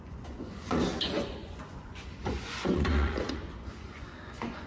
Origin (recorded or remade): remade